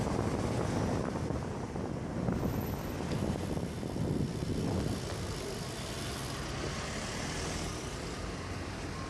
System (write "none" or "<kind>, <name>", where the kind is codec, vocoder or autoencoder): none